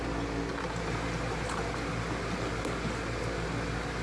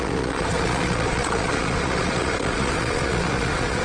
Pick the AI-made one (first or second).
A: second